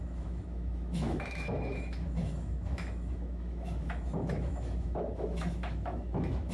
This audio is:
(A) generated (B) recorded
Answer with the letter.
A